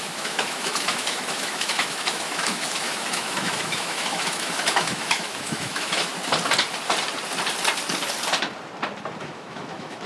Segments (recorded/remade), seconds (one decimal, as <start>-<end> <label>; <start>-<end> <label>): 0.0-6.1 remade; 6.1-9.2 recorded; 9.2-10.1 remade

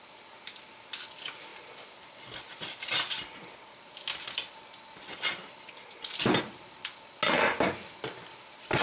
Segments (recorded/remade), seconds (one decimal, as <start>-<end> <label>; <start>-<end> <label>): 0.0-8.8 recorded

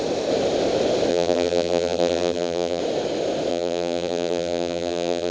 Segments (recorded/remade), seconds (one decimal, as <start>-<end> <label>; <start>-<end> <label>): 0.0-1.1 recorded; 1.1-2.8 remade; 2.8-3.5 recorded; 3.5-5.3 remade

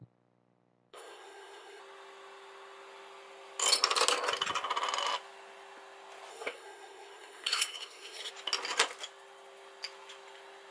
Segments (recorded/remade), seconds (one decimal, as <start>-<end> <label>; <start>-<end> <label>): 0.0-0.9 recorded; 0.9-1.8 remade; 1.8-6.3 recorded; 6.3-8.3 remade; 8.3-10.7 recorded